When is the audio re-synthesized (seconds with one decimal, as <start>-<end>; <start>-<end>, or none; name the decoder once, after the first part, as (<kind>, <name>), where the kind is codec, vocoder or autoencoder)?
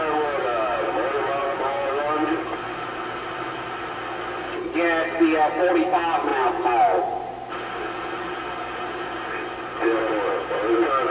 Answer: 1.4-1.9 (vocoder, Vocos)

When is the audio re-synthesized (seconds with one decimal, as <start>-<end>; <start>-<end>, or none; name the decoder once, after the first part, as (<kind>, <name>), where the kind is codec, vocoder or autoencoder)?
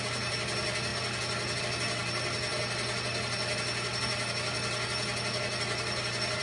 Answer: none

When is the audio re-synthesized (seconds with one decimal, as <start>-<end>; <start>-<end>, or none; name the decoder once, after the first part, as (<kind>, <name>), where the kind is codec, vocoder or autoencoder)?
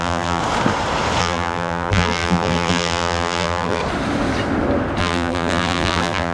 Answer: 0.0-0.4 (vocoder, BigVGAN v2); 1.2-3.8; 5.0-6.3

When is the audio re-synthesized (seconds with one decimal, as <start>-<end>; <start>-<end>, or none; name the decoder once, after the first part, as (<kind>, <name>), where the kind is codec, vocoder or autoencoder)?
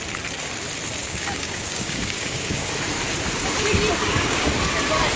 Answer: 1.0-2.7 (codec, DAC); 4.0-4.5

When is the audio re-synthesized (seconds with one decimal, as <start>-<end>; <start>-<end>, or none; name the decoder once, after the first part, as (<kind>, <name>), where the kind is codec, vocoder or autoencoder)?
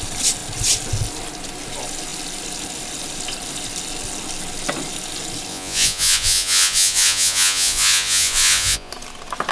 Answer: 5.5-8.9 (vocoder, Vocos)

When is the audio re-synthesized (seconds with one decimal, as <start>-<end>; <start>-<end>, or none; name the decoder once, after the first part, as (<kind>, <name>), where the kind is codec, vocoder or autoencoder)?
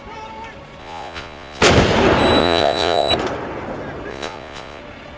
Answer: 0.8-1.6 (vocoder, Vocos); 2.4-3.1; 4.1-4.8